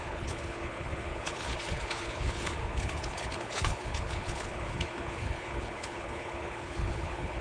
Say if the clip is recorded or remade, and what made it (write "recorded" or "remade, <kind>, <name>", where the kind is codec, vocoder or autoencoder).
remade, codec, HILCodec